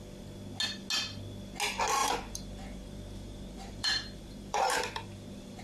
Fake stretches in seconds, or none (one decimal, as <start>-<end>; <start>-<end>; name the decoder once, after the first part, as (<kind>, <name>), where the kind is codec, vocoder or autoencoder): 2.0-5.6 (vocoder, BigVGAN v2)

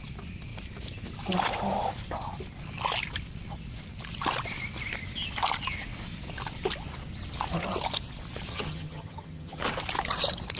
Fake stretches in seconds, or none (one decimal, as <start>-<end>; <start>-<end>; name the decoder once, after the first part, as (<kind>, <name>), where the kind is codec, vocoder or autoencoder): 8.5-9.6 (vocoder, HiFi-GAN)

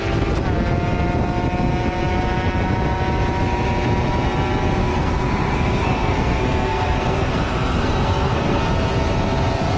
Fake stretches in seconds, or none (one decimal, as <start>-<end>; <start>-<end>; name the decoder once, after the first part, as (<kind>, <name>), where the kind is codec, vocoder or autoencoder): 4.8-8.6 (codec, SNAC)

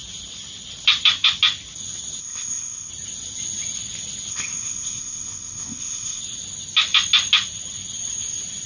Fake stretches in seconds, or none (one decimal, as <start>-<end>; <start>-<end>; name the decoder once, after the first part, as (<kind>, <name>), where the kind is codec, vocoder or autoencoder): 2.2-2.9 (codec, ZipCodec); 4.3-6.2

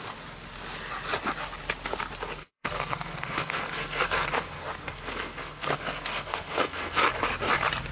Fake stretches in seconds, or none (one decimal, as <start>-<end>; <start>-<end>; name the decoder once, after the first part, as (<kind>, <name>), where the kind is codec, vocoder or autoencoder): 2.4-7.1 (codec, SNAC)

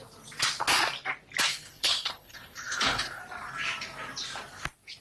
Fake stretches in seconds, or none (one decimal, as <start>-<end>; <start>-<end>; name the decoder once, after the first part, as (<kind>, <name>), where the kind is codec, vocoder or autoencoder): 1.5-3.2 (codec, HILCodec)

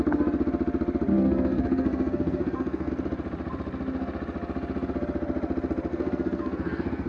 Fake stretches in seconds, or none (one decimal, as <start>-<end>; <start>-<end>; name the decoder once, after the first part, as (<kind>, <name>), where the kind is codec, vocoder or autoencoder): 1.1-2.9 (codec, SNAC); 5.9-7.1